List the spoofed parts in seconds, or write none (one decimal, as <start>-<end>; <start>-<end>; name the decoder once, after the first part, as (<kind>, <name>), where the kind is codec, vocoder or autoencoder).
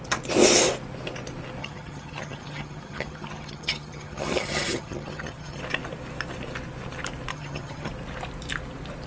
1.6-5.6 (vocoder, HiFi-GAN); 7.3-7.9